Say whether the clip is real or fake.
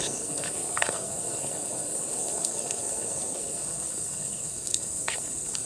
fake